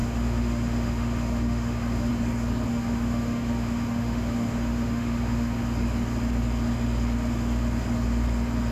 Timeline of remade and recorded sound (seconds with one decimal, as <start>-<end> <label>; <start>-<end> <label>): 0.0-2.1 remade; 2.1-2.7 recorded; 2.7-5.6 remade; 5.6-8.7 recorded